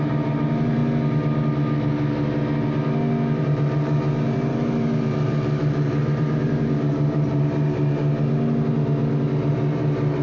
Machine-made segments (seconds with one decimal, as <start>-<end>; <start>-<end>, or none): 0.0-0.8; 3.4-8.0; 9.5-10.2